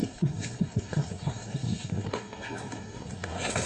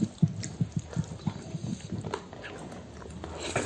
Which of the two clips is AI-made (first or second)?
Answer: first